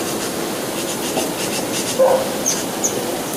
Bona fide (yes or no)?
yes